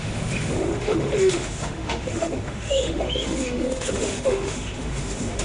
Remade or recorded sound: remade